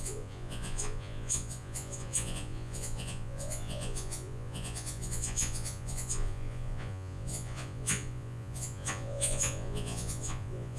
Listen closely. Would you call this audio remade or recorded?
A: remade